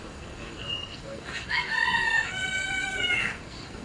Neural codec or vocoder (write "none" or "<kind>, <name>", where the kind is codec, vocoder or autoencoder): codec, SNAC